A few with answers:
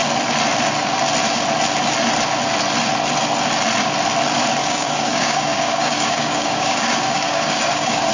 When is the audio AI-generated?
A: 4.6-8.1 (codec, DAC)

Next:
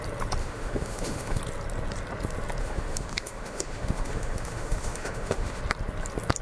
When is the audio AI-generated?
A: 0.4-1.4 (autoencoder, DAC-VAE); 2.6-5.6